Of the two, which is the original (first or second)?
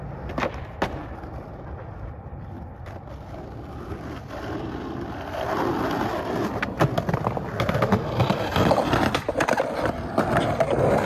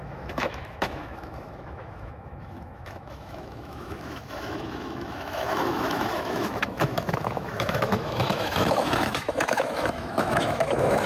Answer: first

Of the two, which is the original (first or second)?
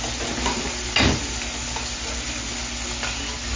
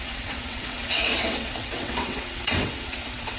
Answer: first